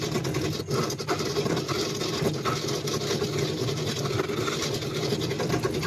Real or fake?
real